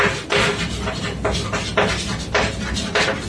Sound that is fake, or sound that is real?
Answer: real